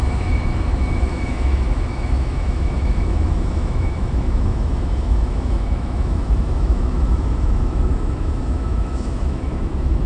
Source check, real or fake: fake